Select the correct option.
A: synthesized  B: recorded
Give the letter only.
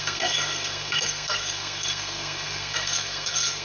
A